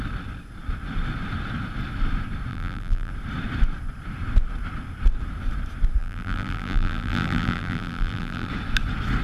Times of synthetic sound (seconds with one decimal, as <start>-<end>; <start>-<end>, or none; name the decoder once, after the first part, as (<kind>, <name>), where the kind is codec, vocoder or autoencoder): 2.5-3.1 (vocoder, BigVGAN v2); 6.0-8.5